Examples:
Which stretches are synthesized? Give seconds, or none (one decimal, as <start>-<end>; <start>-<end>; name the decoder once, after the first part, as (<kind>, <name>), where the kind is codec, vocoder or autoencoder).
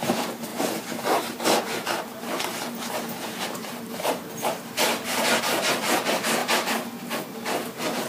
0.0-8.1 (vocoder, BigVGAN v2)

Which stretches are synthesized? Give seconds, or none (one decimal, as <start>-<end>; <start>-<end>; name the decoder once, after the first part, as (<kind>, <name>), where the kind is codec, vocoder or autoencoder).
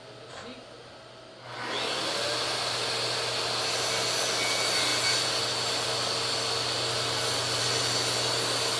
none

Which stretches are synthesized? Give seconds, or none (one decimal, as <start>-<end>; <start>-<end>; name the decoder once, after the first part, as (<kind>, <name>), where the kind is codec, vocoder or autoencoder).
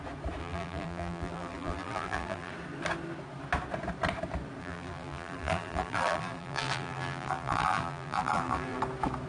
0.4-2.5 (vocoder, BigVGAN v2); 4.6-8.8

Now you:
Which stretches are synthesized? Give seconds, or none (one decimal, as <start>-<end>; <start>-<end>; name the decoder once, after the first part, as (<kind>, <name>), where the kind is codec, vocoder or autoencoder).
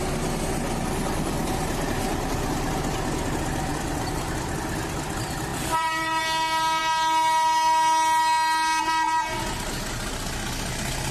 3.7-4.2 (vocoder, BigVGAN v2); 5.5-6.2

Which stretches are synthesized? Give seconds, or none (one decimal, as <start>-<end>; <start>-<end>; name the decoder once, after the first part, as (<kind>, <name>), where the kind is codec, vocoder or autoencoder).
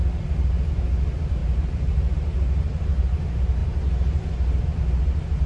1.4-3.2 (vocoder, BigVGAN v2)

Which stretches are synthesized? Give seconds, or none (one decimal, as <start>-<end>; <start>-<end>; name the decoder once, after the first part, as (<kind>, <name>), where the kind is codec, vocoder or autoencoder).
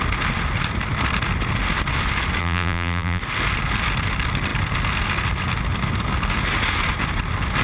2.4-3.2 (vocoder, BigVGAN v2)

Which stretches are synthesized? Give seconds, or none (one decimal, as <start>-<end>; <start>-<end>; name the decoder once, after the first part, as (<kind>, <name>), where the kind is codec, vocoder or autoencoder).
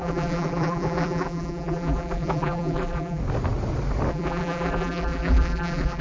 0.0-3.2 (vocoder, BigVGAN v2); 4.1-6.0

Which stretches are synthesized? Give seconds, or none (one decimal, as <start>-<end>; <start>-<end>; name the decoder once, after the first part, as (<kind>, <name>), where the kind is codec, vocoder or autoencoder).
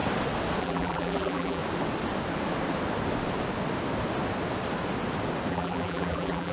0.6-1.6 (vocoder, BigVGAN v2); 5.5-6.5